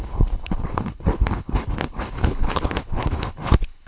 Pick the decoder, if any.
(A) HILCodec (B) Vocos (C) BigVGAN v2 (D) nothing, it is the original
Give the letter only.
A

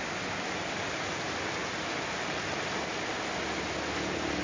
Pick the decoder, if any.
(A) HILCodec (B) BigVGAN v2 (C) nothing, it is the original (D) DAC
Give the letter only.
C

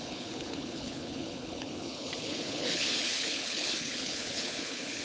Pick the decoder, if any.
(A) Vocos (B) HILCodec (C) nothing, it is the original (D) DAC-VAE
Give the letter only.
B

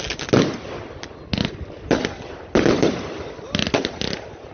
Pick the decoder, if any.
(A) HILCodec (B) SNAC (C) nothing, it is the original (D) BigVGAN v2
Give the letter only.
C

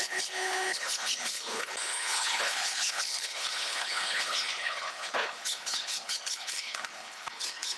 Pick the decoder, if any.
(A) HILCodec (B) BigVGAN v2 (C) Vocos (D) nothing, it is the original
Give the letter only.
A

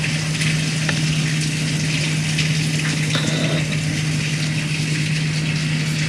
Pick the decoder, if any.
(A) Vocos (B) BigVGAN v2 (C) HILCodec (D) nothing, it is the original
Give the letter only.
D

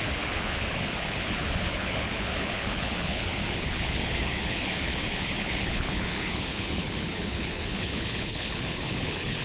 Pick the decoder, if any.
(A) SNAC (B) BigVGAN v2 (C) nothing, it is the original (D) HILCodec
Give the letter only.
D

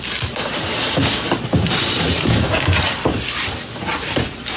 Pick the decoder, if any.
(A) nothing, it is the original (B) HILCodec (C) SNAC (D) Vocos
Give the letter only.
A